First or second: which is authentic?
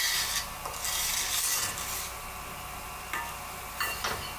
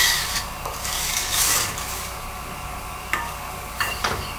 first